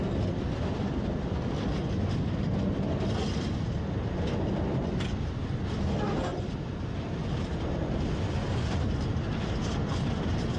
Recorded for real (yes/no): yes